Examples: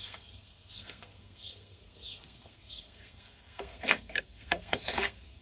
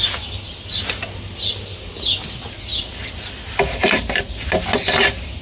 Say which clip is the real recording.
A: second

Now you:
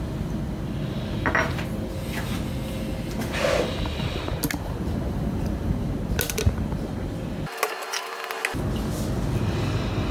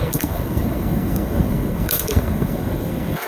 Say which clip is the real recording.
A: first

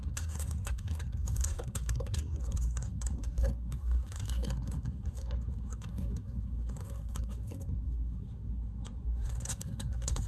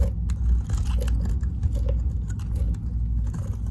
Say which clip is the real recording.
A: second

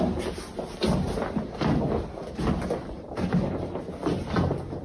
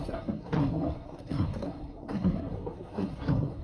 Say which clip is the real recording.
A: first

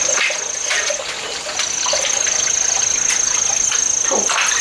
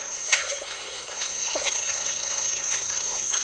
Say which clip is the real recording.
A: first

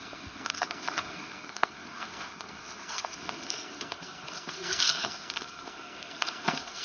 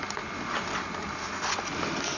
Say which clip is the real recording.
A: second